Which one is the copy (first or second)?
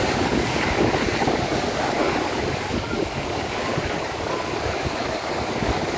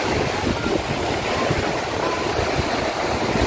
first